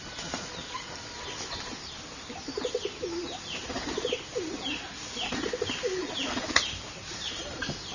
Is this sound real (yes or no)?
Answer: yes